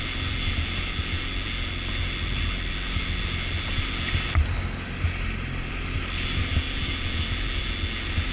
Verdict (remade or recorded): recorded